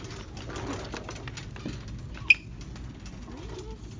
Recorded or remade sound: recorded